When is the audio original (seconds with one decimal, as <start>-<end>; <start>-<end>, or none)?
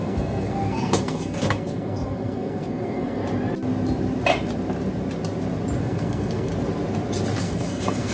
3.2-5.8; 6.5-7.4